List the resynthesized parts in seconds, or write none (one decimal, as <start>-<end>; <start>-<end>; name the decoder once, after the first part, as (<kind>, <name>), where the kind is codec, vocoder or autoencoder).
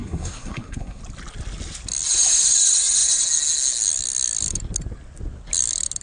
0.0-1.0 (codec, SNAC)